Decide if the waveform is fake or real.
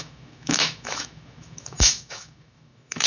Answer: fake